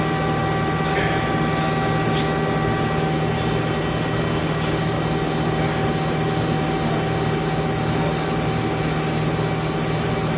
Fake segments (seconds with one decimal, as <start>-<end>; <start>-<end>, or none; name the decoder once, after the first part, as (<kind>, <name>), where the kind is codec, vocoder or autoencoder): none